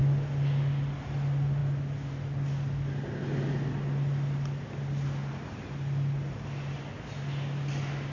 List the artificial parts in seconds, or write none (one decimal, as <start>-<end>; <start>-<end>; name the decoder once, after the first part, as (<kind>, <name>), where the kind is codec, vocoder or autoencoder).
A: none